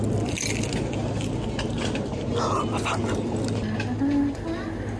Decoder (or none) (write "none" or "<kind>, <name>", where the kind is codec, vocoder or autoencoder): none